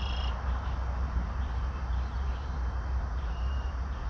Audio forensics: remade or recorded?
remade